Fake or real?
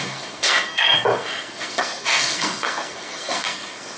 fake